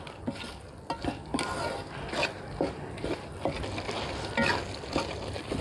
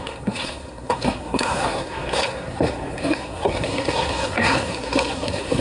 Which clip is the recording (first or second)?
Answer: first